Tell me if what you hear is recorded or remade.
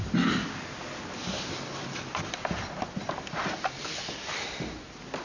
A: recorded